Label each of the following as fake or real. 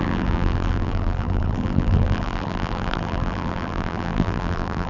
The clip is fake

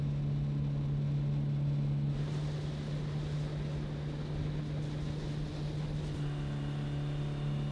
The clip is real